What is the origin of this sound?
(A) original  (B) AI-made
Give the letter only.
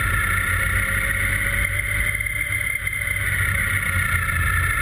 A